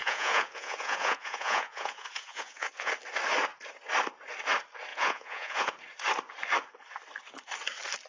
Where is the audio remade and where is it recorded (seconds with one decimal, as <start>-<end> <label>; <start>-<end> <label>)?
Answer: 0.0-2.9 remade; 2.9-4.9 recorded; 4.9-5.7 remade; 5.7-8.1 recorded